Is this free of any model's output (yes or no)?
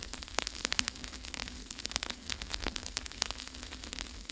no